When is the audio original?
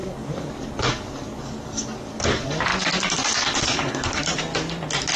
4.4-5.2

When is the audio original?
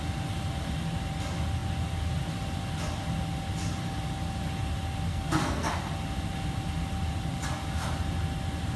0.0-5.1; 5.8-8.8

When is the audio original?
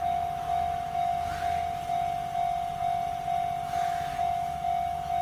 1.1-4.2